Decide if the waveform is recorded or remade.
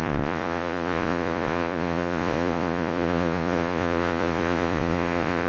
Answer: remade